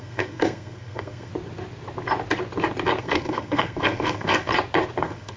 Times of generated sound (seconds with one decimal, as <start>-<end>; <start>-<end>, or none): 0.0-1.3; 3.0-4.5; 5.0-5.4